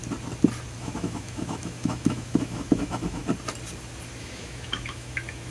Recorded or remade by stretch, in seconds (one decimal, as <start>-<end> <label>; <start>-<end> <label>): 0.0-0.8 recorded; 0.8-3.2 remade; 3.2-4.2 recorded; 4.2-5.5 remade